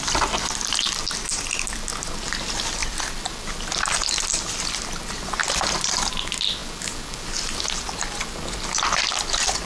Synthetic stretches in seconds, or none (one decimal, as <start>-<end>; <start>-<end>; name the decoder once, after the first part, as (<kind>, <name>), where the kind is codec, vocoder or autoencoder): none